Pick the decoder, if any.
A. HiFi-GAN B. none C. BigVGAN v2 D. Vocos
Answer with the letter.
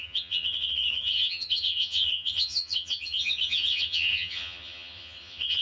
A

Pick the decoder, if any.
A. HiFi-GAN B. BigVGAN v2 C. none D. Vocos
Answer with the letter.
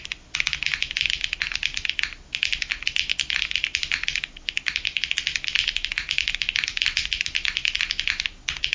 C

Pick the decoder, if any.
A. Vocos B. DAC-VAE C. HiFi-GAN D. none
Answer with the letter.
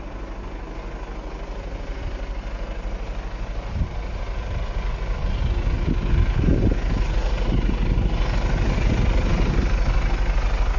D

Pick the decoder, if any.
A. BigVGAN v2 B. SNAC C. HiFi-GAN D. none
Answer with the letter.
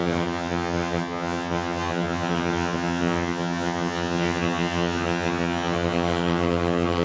C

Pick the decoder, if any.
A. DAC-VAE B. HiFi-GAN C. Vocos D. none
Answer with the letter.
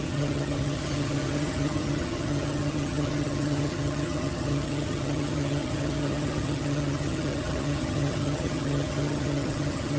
B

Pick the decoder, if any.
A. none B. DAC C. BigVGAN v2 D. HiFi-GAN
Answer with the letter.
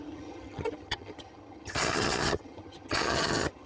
D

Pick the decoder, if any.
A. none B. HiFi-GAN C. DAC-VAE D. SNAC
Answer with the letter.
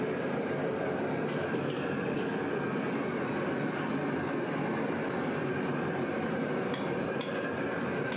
A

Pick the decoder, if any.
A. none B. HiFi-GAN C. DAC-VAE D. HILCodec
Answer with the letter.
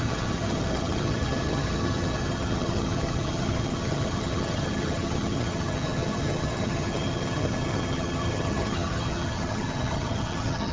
B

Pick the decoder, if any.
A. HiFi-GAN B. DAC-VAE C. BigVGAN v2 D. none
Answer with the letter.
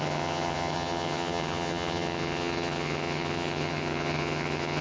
A